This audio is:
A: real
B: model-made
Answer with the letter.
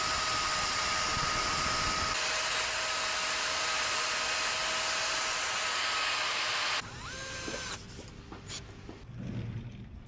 A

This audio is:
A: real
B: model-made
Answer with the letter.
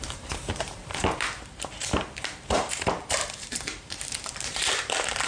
B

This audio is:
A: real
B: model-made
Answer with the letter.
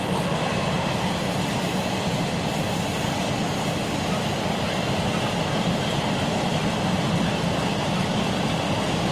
A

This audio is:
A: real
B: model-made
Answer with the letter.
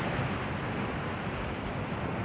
A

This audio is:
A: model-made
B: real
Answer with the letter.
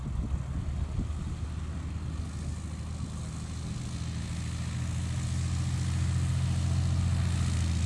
B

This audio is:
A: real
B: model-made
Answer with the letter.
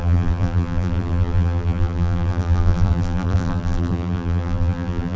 B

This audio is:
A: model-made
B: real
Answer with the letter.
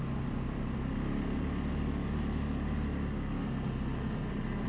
B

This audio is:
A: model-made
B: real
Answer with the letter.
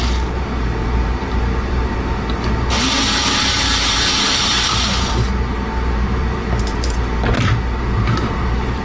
A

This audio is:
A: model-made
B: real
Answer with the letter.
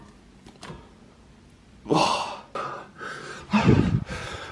B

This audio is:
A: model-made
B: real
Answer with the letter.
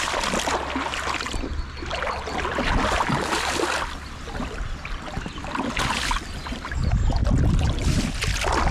B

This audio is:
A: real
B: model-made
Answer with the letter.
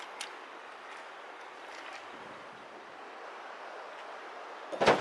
A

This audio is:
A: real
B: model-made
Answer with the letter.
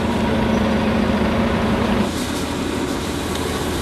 A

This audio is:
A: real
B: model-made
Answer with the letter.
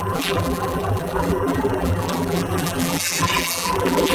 B